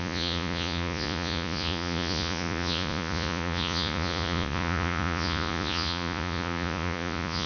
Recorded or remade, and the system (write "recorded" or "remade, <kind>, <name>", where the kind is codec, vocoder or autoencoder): remade, vocoder, Vocos